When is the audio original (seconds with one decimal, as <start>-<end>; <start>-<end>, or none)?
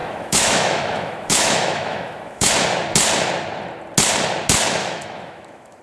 2.5-4.8